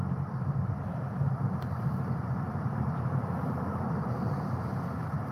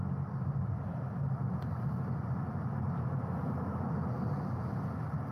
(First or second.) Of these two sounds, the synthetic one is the first